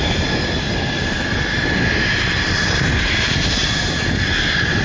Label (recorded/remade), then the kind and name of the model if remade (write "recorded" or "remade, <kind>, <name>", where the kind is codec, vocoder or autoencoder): recorded